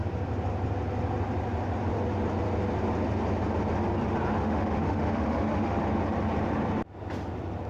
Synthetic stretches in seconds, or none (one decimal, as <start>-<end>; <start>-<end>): 4.3-5.8